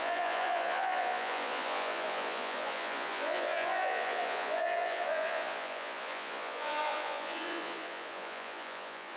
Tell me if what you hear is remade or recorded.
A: remade